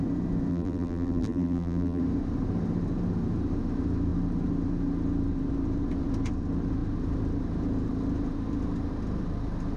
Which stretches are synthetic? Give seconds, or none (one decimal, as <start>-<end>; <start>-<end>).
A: 0.5-2.0